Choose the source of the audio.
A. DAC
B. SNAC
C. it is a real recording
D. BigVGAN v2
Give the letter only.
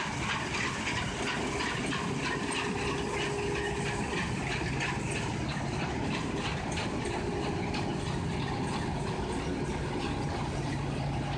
C